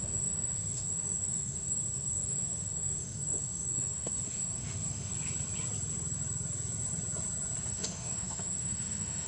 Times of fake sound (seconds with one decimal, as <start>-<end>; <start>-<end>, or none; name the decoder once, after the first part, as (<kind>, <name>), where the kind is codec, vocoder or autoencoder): 0.0-5.1 (autoencoder, DAC-VAE); 7.7-9.3